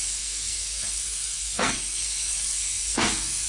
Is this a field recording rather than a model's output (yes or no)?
no